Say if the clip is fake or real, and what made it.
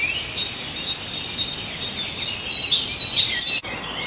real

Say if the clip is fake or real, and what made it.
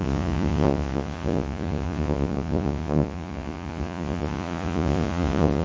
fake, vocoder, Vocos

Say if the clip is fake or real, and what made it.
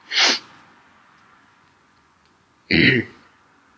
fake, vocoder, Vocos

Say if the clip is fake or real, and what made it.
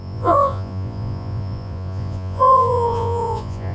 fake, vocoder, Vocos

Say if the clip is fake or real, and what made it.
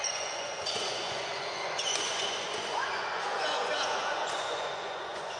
fake, vocoder, Vocos